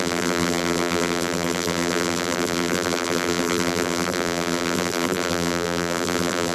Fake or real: fake